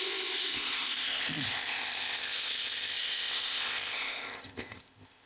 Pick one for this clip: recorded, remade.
remade